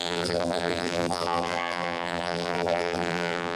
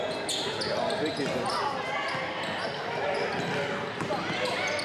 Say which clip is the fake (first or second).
first